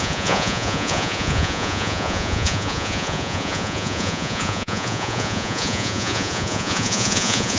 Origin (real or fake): fake